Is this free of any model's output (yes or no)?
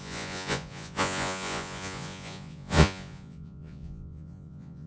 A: no